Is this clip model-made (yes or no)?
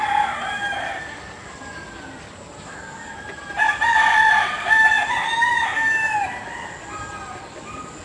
no